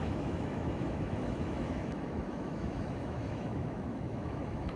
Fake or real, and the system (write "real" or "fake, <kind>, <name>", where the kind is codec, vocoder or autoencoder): fake, autoencoder, DAC-VAE